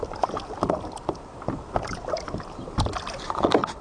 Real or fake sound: fake